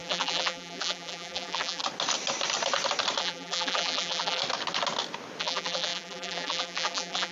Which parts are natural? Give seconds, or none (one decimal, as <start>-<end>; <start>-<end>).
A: 1.8-3.2; 4.4-5.4